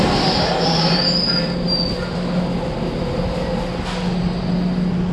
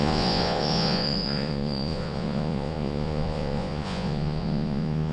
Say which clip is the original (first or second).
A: first